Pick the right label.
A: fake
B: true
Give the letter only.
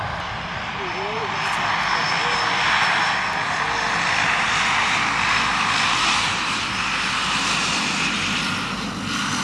B